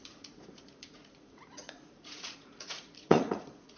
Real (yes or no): no